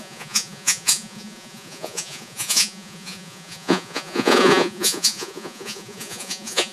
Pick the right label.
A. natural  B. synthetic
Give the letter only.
B